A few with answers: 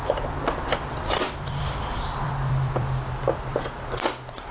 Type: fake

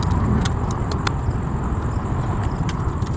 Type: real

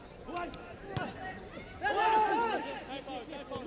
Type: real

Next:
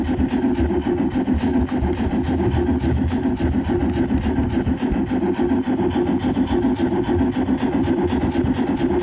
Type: real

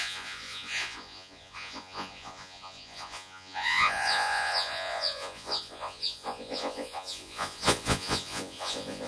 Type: fake